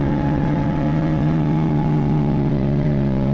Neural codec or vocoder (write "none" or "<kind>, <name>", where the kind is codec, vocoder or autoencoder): vocoder, WaveNeXt